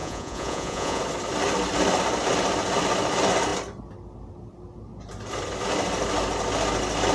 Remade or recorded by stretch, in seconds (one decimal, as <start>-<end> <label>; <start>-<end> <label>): 0.0-1.0 remade; 1.0-7.1 recorded